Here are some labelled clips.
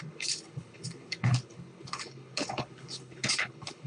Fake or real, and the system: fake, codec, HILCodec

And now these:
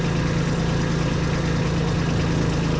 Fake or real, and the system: real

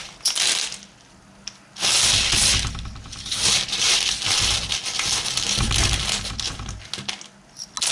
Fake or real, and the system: real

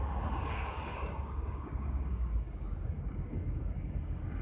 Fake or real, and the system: fake, codec, DAC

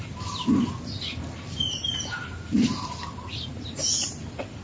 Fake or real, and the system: real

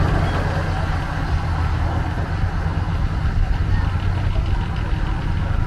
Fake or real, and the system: real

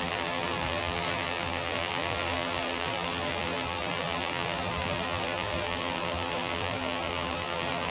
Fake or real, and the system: fake, vocoder, BigVGAN v2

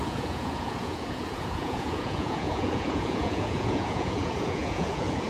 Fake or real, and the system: fake, vocoder, Vocos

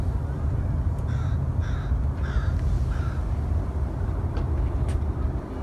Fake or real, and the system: real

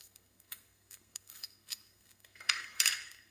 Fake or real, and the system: fake, codec, SNAC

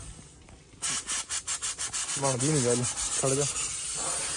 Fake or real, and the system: real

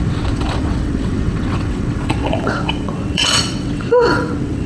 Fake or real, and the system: fake, vocoder, WaveNeXt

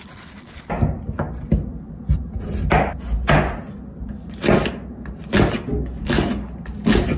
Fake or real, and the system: real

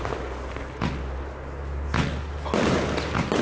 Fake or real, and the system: real